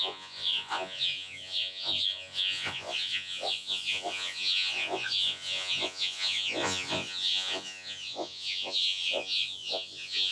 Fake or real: fake